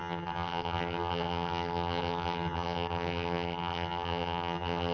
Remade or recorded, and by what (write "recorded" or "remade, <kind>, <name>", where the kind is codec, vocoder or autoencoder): remade, vocoder, HiFi-GAN